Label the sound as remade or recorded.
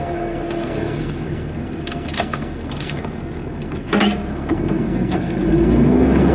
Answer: remade